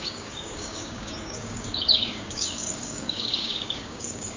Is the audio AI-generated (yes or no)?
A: yes